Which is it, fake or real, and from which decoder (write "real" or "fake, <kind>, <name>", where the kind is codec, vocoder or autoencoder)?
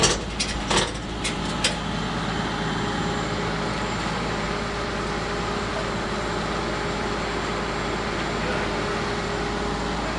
real